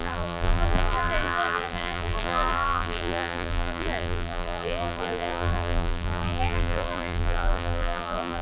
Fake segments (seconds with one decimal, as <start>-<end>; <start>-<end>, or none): 0.0-8.4

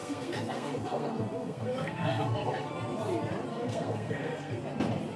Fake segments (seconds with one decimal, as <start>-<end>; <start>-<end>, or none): 0.0-2.7; 3.5-4.6

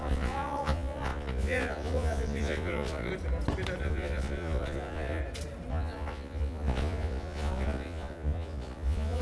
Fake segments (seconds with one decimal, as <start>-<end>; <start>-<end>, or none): 0.0-3.1; 3.8-5.2; 5.7-9.2

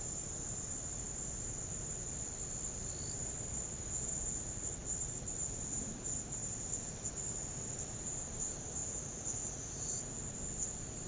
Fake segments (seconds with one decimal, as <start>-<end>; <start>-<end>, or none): 8.8-10.0

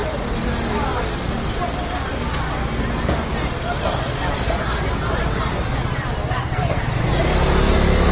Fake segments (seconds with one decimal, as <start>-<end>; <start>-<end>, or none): 6.4-6.9

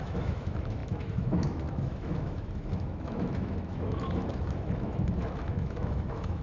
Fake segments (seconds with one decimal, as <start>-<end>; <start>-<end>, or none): 0.0-6.4